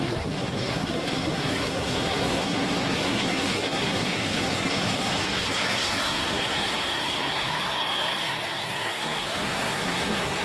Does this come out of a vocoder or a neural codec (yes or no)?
yes